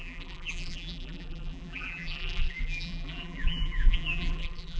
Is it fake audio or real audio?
fake